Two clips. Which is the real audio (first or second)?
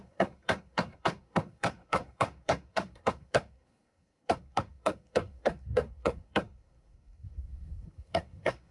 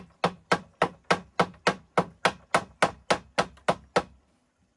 second